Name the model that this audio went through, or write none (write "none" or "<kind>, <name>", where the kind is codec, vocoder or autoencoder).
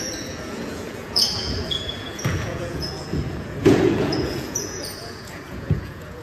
vocoder, Vocos